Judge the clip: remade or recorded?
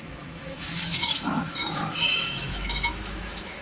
remade